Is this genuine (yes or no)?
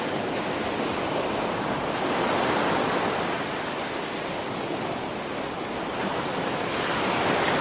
yes